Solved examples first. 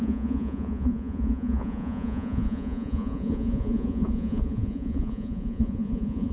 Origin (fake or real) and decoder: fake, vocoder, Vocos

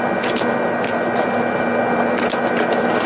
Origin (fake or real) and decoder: real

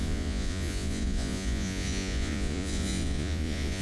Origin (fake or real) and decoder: fake, vocoder, Vocos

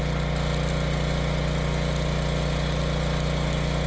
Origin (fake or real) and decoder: real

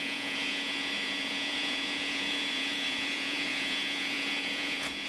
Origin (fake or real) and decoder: fake, vocoder, Vocos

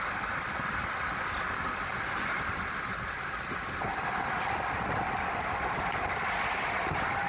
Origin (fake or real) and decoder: real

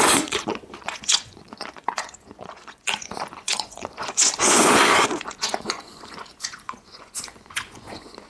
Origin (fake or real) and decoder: fake, vocoder, Vocos